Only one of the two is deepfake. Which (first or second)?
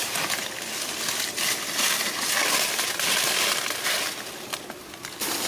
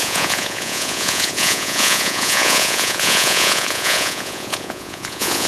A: second